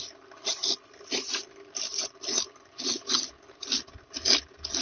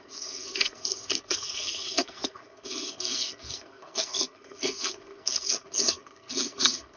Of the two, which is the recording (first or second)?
first